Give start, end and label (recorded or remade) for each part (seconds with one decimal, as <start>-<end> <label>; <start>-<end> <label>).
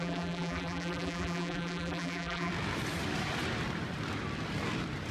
0.0-2.5 remade; 2.5-5.1 recorded